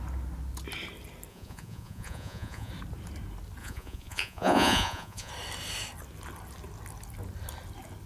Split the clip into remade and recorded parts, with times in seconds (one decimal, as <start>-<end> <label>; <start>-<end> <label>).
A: 0.0-1.3 recorded; 1.3-2.7 remade; 2.7-3.6 recorded; 3.6-5.3 remade; 5.3-8.1 recorded